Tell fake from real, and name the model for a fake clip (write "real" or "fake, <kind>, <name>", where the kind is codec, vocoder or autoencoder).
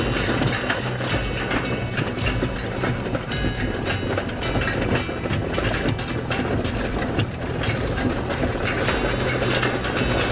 real